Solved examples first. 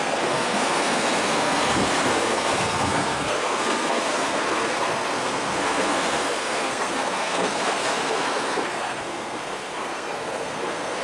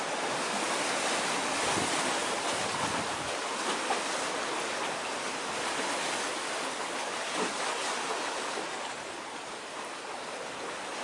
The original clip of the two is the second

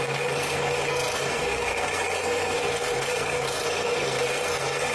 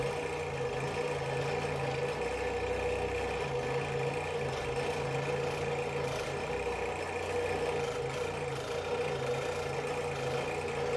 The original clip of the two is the second